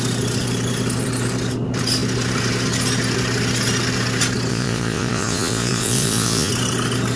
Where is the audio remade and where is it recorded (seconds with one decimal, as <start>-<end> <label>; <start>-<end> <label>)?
0.0-4.5 recorded; 4.5-6.5 remade; 6.5-7.2 recorded